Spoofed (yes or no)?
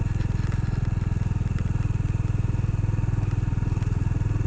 no